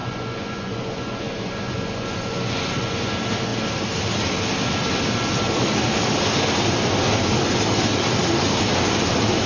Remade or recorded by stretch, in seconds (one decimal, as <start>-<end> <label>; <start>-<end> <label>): 0.0-3.1 remade; 3.1-9.5 recorded